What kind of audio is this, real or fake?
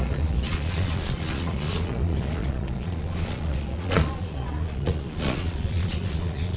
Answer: fake